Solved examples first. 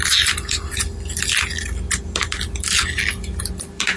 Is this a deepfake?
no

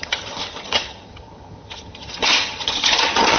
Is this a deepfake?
yes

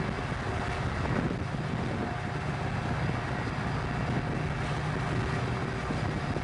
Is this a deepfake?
no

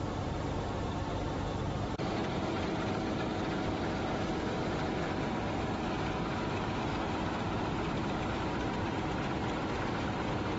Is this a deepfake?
yes